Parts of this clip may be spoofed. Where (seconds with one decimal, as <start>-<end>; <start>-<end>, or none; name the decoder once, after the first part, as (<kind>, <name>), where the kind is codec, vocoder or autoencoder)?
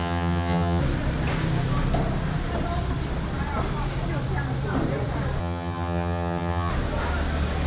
0.0-0.8 (vocoder, HiFi-GAN); 5.4-6.7